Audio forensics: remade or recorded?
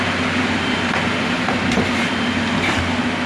recorded